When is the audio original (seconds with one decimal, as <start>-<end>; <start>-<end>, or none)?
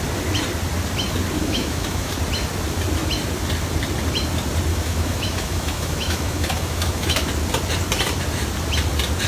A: 0.0-1.4; 2.1-4.7; 7.3-9.3